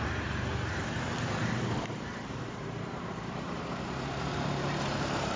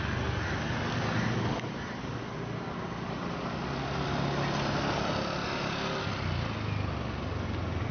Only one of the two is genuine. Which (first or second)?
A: second